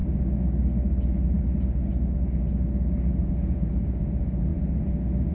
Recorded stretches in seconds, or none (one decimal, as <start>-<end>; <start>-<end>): 0.0-3.2; 4.5-5.3